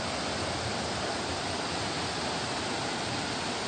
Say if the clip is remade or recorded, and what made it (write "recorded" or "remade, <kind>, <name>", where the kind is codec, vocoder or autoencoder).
recorded